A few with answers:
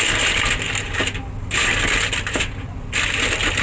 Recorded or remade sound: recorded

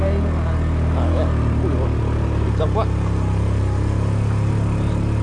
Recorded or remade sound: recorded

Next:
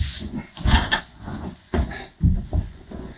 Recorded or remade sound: remade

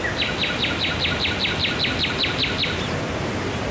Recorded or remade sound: recorded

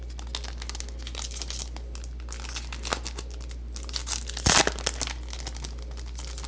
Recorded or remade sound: recorded